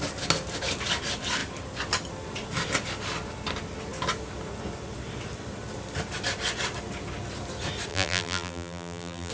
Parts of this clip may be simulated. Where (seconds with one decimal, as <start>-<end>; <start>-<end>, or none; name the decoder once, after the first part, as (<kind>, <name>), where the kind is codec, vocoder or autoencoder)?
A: 7.9-9.3 (vocoder, BigVGAN v2)